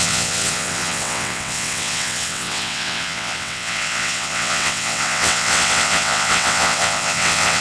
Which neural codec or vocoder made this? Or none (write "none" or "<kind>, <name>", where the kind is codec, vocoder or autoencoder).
vocoder, WaveNeXt